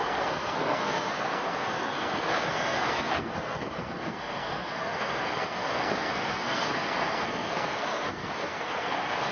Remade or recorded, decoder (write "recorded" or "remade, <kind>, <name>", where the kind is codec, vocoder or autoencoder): remade, codec, SNAC